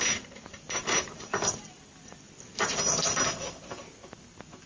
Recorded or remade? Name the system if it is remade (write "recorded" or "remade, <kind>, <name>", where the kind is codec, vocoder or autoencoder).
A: recorded